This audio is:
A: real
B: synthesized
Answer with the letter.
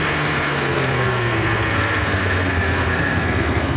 B